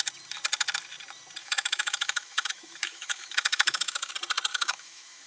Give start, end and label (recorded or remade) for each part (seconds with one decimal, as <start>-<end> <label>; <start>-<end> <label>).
0.0-1.4 recorded; 1.4-4.1 remade; 4.1-4.5 recorded; 4.5-5.3 remade